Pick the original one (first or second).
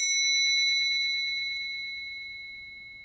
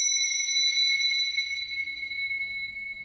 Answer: first